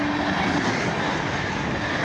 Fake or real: real